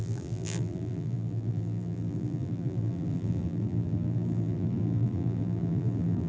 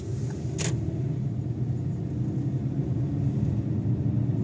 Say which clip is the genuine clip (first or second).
second